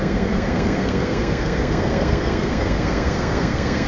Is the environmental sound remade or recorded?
remade